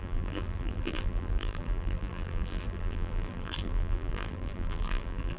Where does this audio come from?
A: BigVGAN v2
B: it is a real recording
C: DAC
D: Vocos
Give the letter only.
A